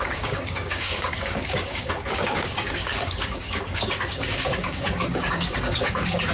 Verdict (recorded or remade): remade